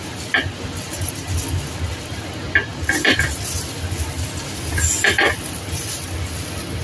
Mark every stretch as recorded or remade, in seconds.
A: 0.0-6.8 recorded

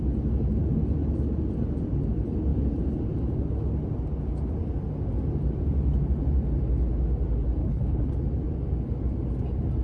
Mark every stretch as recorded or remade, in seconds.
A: 0.0-7.6 recorded; 7.6-8.1 remade; 8.1-9.8 recorded

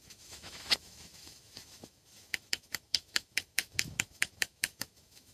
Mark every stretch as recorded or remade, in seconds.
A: 0.0-5.3 remade

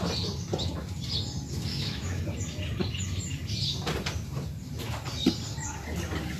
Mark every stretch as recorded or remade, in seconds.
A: 0.0-1.7 recorded; 1.7-2.2 remade; 2.2-6.4 recorded

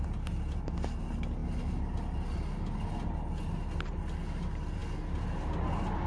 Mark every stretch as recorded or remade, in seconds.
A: 0.0-6.1 recorded

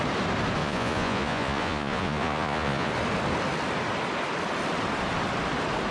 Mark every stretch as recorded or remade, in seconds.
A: 0.0-0.6 recorded; 0.6-2.9 remade; 2.9-5.9 recorded

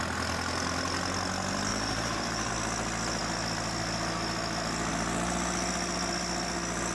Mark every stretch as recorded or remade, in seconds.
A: 0.0-1.7 recorded; 1.7-2.5 remade; 2.5-6.9 recorded